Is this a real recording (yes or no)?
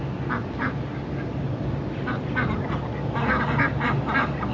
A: yes